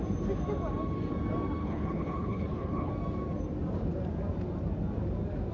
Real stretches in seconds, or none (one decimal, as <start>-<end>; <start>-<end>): 0.0-1.6; 2.9-5.5